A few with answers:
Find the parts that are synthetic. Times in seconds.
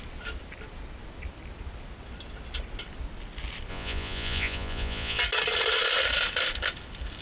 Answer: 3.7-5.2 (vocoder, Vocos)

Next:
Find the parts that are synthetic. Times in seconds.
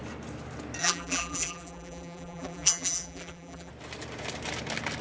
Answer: 0.8-3.7 (vocoder, BigVGAN v2)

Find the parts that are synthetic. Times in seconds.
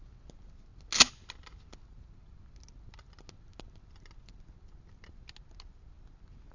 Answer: none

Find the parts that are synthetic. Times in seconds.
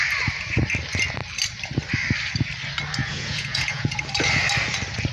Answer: 3.0-4.0 (vocoder, Vocos)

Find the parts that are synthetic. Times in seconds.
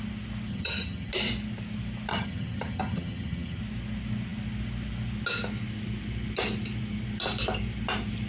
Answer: 0.5-1.1 (vocoder, HiFi-GAN); 2.1-3.6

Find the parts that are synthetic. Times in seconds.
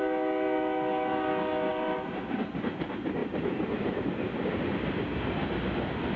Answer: 1.7-2.4 (vocoder, BigVGAN v2); 3.2-4.6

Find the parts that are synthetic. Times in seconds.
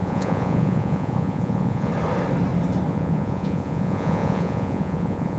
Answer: 0.0-1.9 (vocoder, Vocos); 2.9-5.4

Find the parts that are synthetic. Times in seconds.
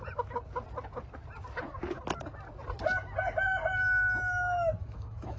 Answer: 4.8-5.4 (autoencoder, DAC-VAE)